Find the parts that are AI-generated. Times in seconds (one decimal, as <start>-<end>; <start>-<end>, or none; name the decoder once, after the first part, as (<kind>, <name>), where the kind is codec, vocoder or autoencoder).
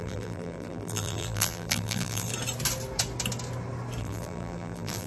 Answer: 0.0-2.3 (vocoder, BigVGAN v2); 4.0-5.1